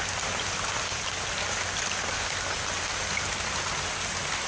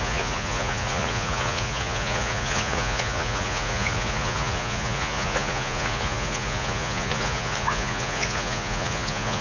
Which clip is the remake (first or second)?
second